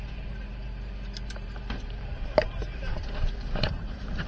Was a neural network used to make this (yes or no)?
yes